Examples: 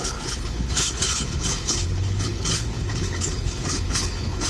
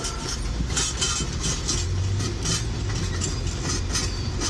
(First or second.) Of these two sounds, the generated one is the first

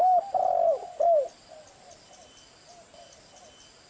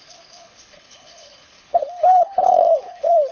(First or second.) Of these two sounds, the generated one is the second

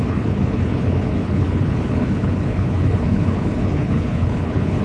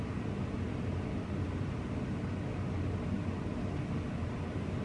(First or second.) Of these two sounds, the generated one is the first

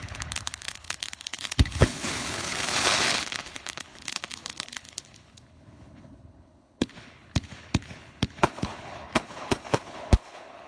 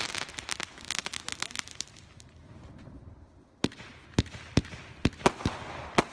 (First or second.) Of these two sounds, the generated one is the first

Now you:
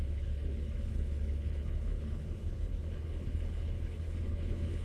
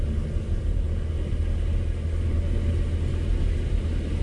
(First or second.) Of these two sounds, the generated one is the first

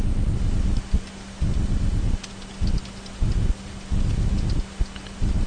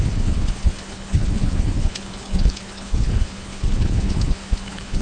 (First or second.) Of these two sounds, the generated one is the second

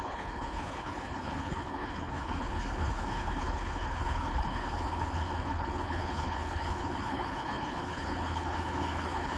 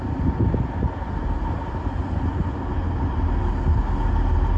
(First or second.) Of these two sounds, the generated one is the first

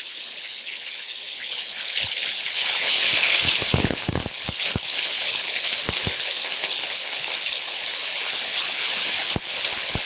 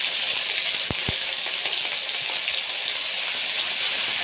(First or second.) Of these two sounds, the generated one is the first